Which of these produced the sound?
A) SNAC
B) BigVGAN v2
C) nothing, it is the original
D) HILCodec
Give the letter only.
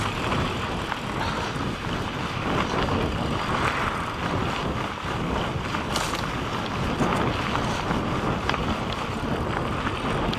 C